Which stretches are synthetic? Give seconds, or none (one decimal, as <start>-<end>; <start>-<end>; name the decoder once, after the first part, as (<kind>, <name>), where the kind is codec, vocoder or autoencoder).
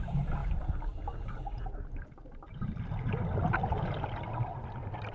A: none